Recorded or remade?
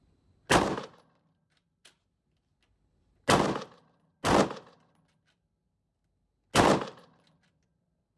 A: recorded